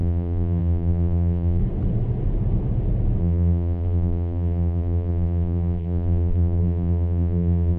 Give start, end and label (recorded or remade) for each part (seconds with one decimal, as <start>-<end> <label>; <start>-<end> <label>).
0.0-1.6 remade; 1.6-3.2 recorded; 3.2-7.8 remade